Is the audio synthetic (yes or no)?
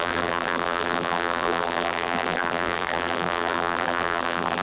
yes